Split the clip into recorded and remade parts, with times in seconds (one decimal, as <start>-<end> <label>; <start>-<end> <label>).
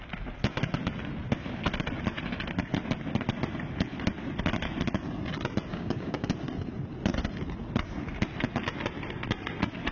0.0-5.7 recorded; 5.7-6.3 remade; 6.3-9.9 recorded